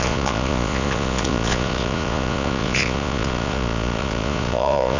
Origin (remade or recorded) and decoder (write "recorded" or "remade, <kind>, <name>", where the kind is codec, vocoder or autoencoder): remade, vocoder, Vocos